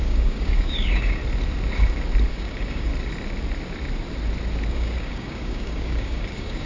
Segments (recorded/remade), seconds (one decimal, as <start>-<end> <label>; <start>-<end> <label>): 0.0-1.2 remade; 1.2-2.3 recorded; 2.3-2.9 remade; 2.9-4.7 recorded; 4.7-6.7 remade